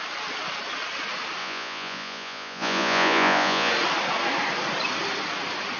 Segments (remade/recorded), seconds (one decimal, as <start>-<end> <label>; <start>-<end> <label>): 0.0-1.4 recorded; 1.4-3.7 remade; 3.7-5.8 recorded